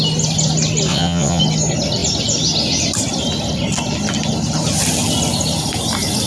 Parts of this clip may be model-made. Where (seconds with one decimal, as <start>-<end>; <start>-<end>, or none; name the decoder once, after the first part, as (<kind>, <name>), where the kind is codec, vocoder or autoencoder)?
0.9-1.4 (vocoder, WaveNeXt)